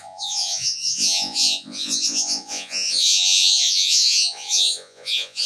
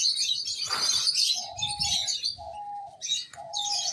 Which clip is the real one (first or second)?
second